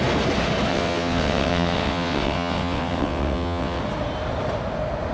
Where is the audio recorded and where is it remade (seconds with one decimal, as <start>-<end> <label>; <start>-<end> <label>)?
0.0-0.7 recorded; 0.7-3.8 remade; 3.8-5.1 recorded